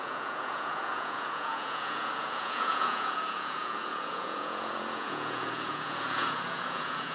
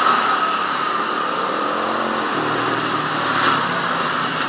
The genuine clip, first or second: second